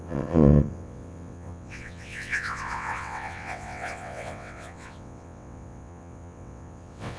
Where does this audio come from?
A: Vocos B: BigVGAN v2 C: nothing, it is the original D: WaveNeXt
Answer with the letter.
D